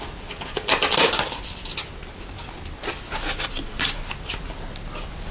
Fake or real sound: real